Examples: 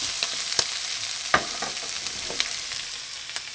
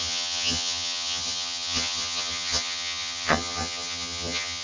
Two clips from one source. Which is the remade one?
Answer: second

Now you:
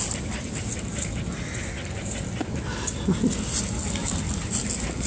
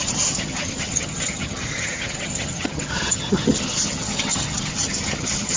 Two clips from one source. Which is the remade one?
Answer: second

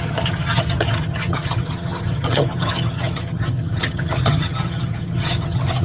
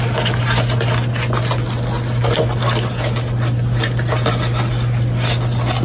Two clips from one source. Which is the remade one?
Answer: first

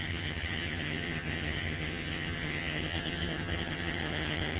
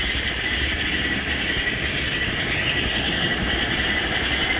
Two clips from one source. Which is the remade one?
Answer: first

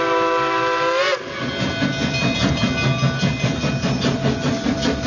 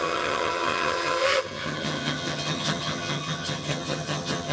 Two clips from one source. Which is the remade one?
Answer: second